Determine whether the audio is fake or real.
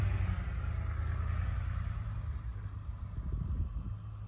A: real